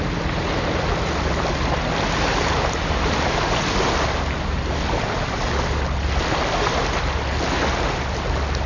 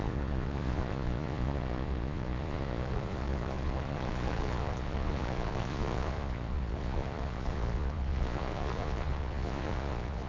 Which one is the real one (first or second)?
first